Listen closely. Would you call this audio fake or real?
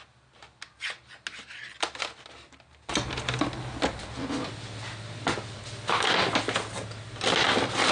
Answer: real